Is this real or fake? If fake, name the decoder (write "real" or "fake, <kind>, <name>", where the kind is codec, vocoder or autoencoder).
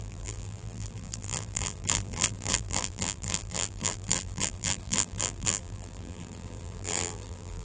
fake, vocoder, BigVGAN v2